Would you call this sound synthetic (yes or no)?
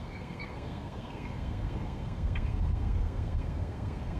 yes